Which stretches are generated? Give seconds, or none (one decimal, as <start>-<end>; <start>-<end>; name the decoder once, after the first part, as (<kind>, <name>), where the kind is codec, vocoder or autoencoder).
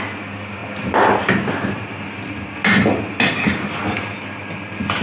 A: none